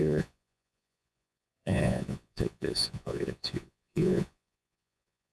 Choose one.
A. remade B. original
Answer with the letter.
A